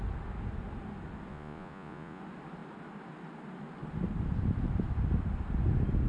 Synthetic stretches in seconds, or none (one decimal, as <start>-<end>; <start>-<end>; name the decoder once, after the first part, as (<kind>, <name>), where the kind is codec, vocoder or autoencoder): 1.3-2.2 (vocoder, Vocos)